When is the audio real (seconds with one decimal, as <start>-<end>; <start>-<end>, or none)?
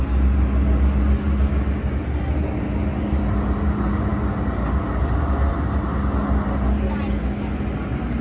0.0-8.2